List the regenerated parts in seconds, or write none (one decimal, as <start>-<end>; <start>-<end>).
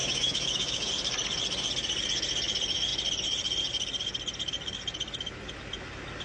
0.0-0.9